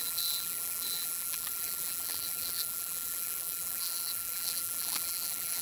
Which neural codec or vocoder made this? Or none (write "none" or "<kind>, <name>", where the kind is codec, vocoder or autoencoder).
vocoder, BigVGAN v2